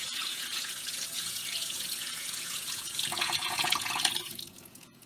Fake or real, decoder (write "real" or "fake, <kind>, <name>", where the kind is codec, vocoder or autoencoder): fake, vocoder, Vocos